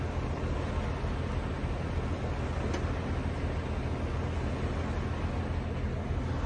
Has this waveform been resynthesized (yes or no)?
no